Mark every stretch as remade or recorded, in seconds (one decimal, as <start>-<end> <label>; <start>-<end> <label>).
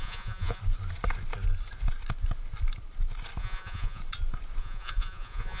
0.0-0.6 remade; 0.6-3.4 recorded; 3.4-4.0 remade; 4.0-4.6 recorded; 4.6-5.6 remade